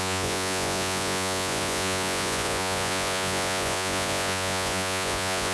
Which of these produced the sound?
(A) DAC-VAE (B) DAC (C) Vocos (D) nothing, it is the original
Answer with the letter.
C